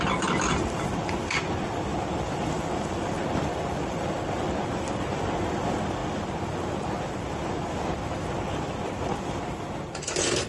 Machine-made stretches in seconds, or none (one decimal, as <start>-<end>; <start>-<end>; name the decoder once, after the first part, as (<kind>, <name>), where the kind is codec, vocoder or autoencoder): 0.0-10.5 (vocoder, BigVGAN v2)